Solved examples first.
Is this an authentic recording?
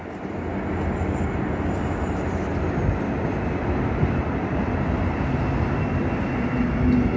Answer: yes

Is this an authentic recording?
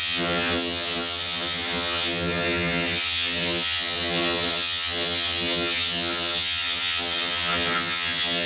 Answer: no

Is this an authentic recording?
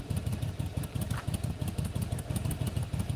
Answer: yes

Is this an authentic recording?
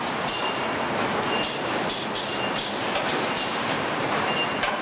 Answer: yes